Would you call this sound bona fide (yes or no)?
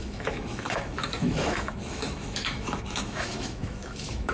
no